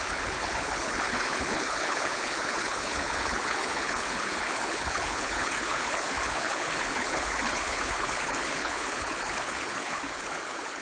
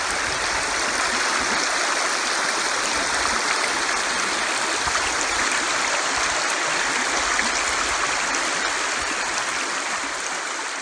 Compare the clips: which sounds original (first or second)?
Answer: second